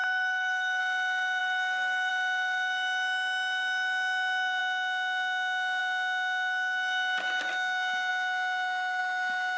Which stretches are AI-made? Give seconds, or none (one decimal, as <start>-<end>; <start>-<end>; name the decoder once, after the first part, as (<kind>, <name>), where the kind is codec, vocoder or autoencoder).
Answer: 0.0-0.8 (codec, SNAC); 1.4-2.1